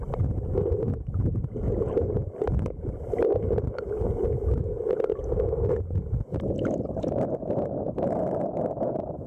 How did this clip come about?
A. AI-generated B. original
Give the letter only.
B